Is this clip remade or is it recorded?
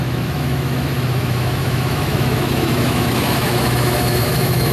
remade